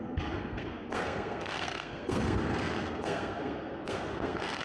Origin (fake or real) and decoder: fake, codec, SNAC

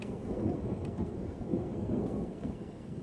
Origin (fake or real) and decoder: fake, codec, SNAC